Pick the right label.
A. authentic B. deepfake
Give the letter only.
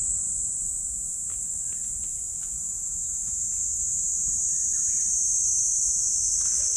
A